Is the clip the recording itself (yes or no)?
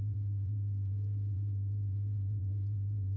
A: no